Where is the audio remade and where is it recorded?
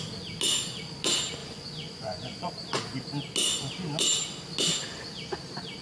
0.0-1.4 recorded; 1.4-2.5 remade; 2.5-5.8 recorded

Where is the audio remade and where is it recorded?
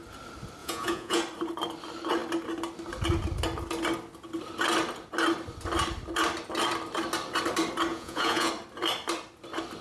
0.0-0.6 recorded; 0.6-1.2 remade; 1.2-7.9 recorded; 7.9-8.5 remade; 8.5-9.8 recorded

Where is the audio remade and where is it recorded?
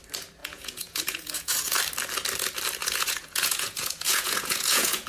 0.0-0.4 recorded; 0.4-1.8 remade; 1.8-2.8 recorded; 2.8-5.1 remade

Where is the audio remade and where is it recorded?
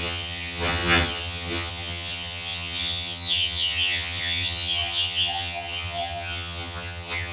0.0-7.3 remade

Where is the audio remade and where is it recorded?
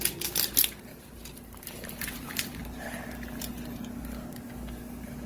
0.0-0.9 recorded; 0.9-2.6 remade; 2.6-5.3 recorded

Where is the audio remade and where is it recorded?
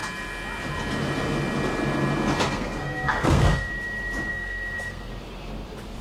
0.0-2.5 recorded; 2.5-3.7 remade; 3.7-4.3 recorded; 4.3-5.1 remade; 5.1-6.0 recorded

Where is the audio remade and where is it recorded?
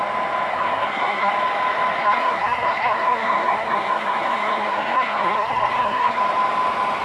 0.0-0.5 recorded; 0.5-1.3 remade; 1.3-2.0 recorded; 2.0-6.2 remade; 6.2-7.0 recorded